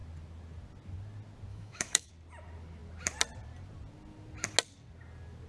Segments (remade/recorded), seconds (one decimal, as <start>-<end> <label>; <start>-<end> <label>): 0.0-1.5 recorded; 1.5-2.1 remade; 2.1-5.5 recorded